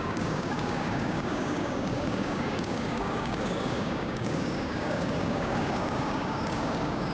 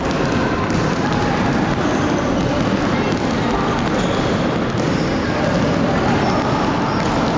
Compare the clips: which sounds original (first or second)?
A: second